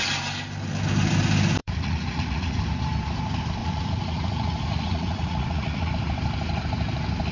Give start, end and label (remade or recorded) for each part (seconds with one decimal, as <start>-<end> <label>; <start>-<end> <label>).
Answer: 0.0-1.6 recorded; 1.6-2.6 remade; 2.6-3.6 recorded; 3.6-5.9 remade; 5.9-7.3 recorded